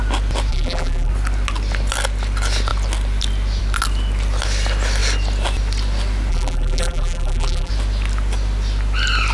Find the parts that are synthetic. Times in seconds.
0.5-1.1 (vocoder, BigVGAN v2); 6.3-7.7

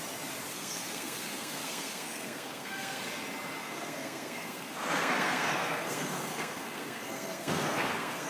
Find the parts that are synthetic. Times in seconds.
0.5-3.0 (codec, SNAC); 3.6-8.3

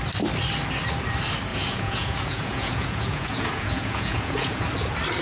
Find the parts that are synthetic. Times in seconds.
1.5-4.6 (vocoder, Vocos)

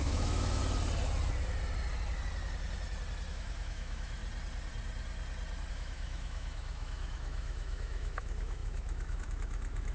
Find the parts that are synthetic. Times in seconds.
0.0-0.6 (autoencoder, DAC-VAE); 3.3-4.2; 5.7-9.9

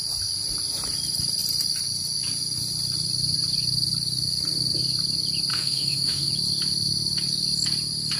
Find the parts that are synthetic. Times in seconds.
5.5-6.3 (autoencoder, DAC-VAE)

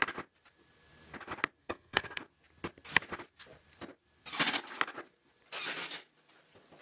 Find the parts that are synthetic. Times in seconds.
1.6-2.2 (codec, SNAC)